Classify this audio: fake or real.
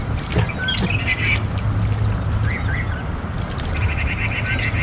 real